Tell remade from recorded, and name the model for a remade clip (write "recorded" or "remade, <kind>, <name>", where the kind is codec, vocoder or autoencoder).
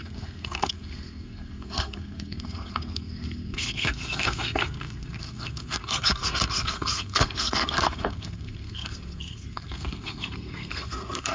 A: remade, codec, SNAC